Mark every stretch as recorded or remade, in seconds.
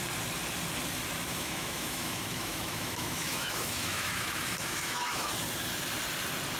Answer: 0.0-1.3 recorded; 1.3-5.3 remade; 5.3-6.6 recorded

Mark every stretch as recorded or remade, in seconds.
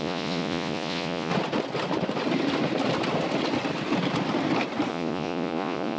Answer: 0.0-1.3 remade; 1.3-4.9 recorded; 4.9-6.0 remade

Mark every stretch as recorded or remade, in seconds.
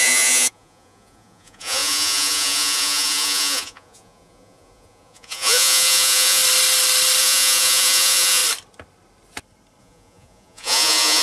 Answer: 0.0-6.4 remade; 6.4-7.2 recorded; 7.2-8.4 remade; 8.4-9.8 recorded; 9.8-11.2 remade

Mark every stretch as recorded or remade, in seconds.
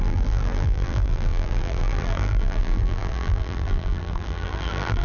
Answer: 0.0-5.0 remade